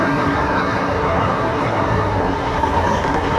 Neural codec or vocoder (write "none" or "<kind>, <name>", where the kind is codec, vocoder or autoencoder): codec, SNAC